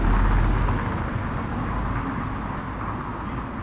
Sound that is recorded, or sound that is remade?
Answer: recorded